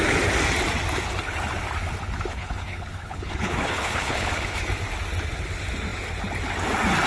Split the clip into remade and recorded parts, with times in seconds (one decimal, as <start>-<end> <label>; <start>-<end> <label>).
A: 0.0-2.3 recorded; 2.3-4.6 remade; 4.6-7.1 recorded